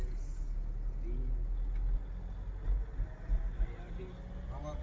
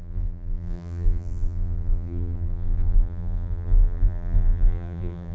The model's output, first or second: second